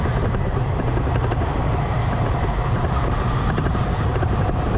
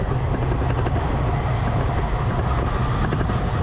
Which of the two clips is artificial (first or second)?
first